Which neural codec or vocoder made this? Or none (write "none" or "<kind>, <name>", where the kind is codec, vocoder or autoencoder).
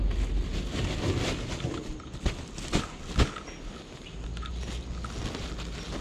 none